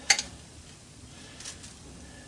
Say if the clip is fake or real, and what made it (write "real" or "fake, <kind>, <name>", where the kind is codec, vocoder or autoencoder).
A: real